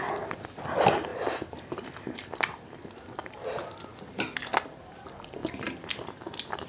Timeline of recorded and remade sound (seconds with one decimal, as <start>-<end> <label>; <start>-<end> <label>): 0.0-6.7 recorded